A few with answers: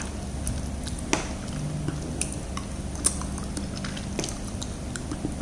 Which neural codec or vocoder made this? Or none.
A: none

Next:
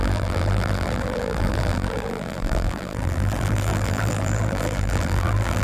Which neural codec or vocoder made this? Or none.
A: vocoder, BigVGAN v2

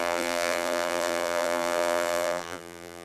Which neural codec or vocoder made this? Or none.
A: vocoder, BigVGAN v2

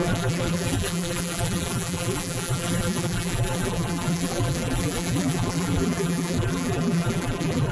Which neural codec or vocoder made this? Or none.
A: vocoder, BigVGAN v2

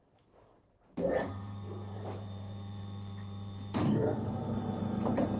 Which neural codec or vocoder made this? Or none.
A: vocoder, BigVGAN v2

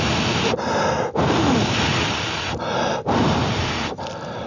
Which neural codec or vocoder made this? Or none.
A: none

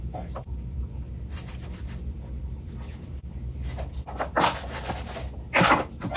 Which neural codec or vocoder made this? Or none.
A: none